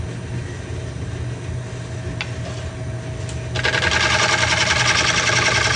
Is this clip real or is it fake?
real